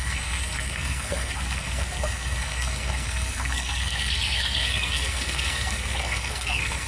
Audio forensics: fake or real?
fake